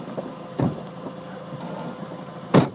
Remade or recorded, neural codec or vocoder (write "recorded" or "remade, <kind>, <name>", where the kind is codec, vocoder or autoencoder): recorded